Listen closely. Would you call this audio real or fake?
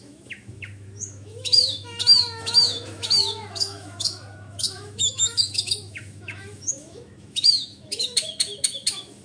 fake